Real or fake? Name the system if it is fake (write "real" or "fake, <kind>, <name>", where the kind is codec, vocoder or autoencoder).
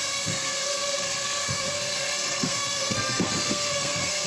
fake, codec, SNAC